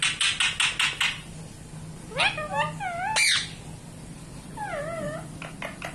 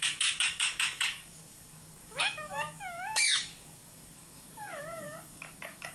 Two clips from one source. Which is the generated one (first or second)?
second